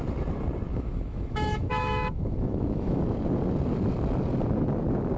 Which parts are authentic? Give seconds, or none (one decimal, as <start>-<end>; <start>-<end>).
0.0-0.7; 3.0-5.2